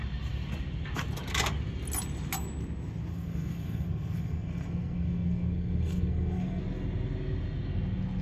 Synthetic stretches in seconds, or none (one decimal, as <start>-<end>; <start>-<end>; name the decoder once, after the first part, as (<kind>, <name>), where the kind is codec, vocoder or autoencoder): 3.1-6.6 (codec, SNAC)